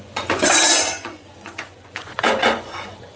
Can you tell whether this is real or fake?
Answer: fake